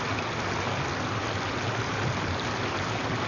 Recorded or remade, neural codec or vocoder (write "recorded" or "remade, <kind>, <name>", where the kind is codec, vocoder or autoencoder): recorded